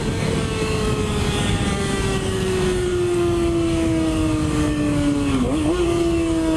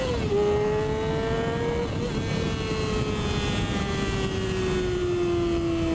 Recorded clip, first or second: second